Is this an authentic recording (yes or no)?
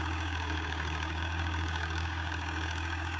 no